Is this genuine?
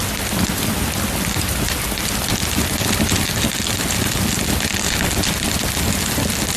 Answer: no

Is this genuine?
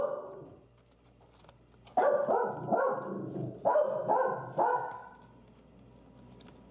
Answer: yes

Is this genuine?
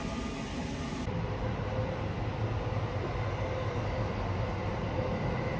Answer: yes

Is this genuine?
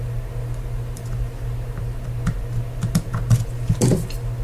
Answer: yes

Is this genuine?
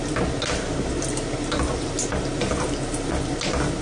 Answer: yes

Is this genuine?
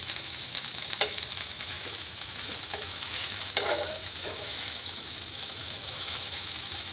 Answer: no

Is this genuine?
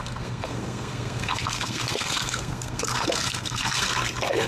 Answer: no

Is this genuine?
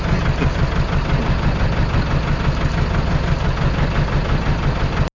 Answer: yes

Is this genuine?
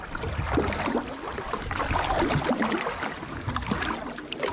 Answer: yes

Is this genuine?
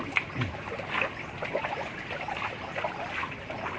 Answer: yes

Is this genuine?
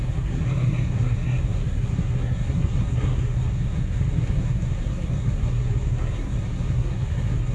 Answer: no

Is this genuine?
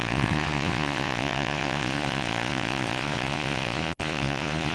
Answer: no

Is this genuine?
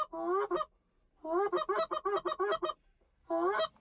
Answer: yes